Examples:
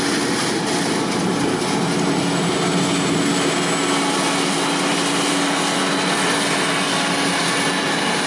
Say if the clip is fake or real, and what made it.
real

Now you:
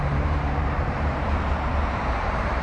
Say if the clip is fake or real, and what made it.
fake, vocoder, BigVGAN v2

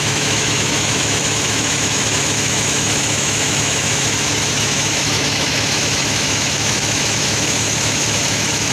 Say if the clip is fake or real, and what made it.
fake, autoencoder, DAC-VAE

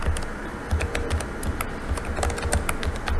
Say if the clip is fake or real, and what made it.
real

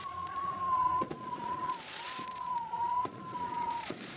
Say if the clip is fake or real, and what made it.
fake, vocoder, Vocos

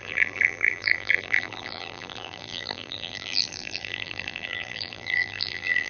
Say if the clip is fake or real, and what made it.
fake, vocoder, BigVGAN v2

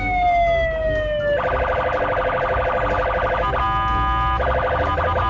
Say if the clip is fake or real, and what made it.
real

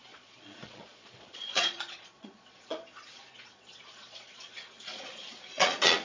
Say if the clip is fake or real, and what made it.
fake, vocoder, Vocos